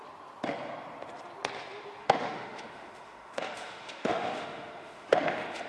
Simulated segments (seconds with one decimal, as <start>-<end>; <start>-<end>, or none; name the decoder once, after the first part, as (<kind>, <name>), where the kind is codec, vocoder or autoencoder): 2.0-5.7 (autoencoder, DAC-VAE)